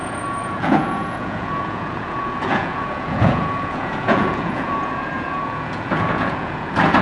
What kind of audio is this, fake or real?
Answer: fake